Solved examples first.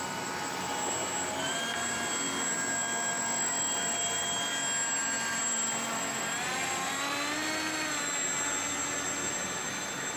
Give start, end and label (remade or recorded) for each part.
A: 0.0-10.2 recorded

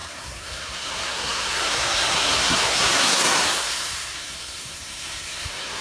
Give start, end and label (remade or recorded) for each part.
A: 0.0-5.8 remade

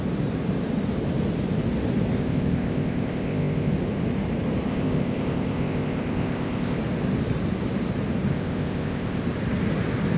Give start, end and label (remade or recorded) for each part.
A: 0.0-2.2 recorded; 2.2-3.7 remade; 3.7-4.7 recorded; 4.7-6.8 remade; 6.8-8.3 recorded; 8.3-9.2 remade; 9.2-10.2 recorded

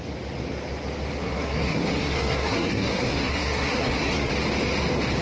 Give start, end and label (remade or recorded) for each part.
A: 0.0-1.2 recorded; 1.2-4.3 remade; 4.3-5.2 recorded

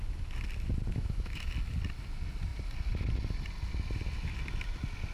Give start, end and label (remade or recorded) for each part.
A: 0.0-0.9 recorded; 0.9-1.5 remade; 1.5-5.1 recorded

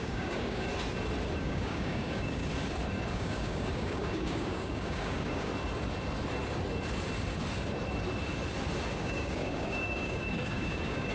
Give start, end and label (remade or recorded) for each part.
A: 0.0-0.7 remade; 0.7-1.4 recorded; 1.4-2.4 remade; 2.4-3.1 recorded; 3.1-5.5 remade; 5.5-9.0 recorded; 9.0-11.1 remade

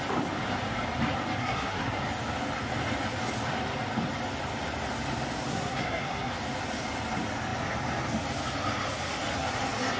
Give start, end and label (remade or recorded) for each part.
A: 0.0-1.4 recorded; 1.4-2.0 remade; 2.0-5.5 recorded; 5.5-6.3 remade; 6.3-10.0 recorded